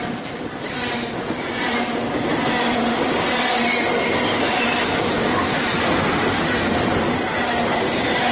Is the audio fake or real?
real